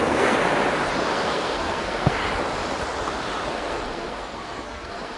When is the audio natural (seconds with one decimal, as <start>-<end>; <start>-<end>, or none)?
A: 0.4-1.0; 2.2-3.5

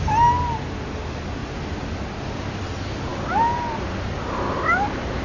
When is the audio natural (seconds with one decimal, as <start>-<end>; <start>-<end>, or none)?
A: 0.0-5.2